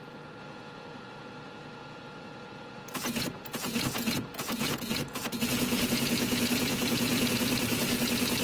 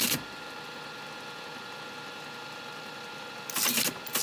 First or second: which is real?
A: second